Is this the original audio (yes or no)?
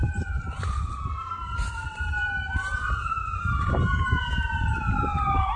yes